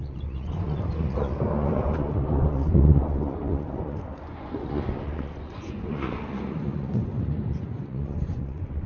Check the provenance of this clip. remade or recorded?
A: remade